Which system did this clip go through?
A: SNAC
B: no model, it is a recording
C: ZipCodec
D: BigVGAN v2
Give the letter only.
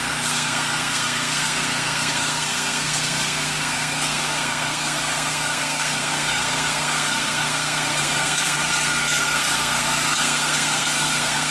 A